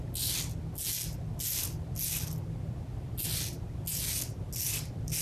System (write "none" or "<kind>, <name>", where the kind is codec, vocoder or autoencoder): none